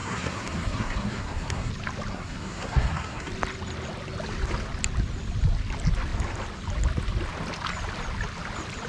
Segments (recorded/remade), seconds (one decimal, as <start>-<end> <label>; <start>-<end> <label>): 0.0-1.7 remade; 1.7-2.1 recorded; 2.1-3.3 remade; 3.3-8.9 recorded